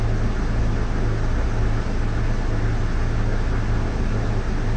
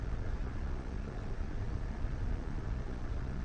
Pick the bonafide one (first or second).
first